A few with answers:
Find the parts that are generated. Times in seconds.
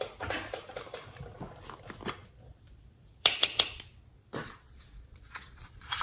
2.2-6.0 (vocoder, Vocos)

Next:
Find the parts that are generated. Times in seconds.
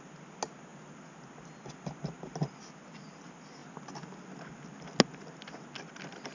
none